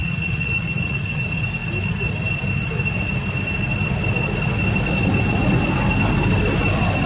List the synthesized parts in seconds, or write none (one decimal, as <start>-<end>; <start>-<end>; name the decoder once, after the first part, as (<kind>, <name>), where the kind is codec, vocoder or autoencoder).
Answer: 0.0-1.0 (vocoder, Vocos)